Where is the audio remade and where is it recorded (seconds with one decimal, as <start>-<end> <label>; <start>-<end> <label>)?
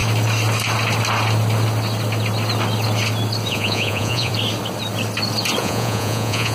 0.0-3.5 recorded; 3.5-4.3 remade; 4.3-5.6 recorded; 5.6-6.5 remade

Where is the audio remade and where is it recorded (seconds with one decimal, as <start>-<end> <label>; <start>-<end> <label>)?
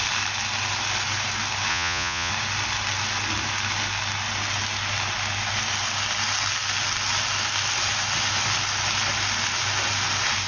0.0-1.7 recorded; 1.7-2.3 remade; 2.3-10.5 recorded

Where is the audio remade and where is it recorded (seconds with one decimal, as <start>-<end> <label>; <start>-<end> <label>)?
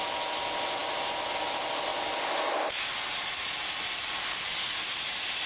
0.0-5.5 recorded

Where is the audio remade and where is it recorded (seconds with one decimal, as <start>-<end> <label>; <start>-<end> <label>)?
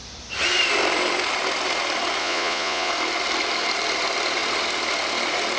0.0-2.2 recorded; 2.2-2.9 remade; 2.9-5.6 recorded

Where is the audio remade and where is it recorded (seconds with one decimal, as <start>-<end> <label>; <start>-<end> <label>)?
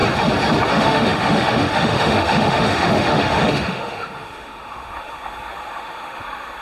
0.0-0.7 recorded; 0.7-6.6 remade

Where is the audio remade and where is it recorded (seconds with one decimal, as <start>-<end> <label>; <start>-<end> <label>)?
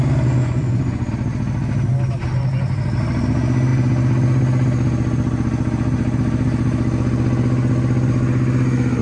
0.0-0.4 recorded; 0.4-1.1 remade; 1.1-9.0 recorded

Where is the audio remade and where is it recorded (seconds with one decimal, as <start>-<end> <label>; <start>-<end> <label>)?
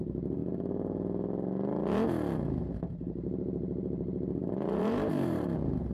0.0-0.4 remade; 0.4-2.8 recorded; 2.8-5.9 remade